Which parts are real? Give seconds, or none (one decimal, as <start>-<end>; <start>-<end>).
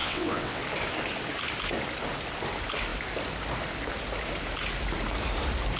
0.6-5.8